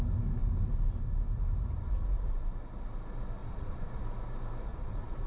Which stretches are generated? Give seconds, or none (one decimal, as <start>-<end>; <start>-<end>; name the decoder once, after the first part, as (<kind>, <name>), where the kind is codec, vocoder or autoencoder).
3.4-4.0 (vocoder, Vocos); 4.7-5.3